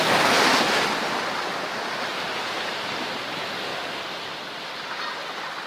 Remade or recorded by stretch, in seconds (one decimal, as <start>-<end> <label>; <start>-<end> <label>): 0.0-5.7 recorded